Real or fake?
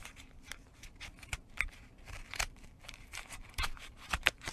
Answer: fake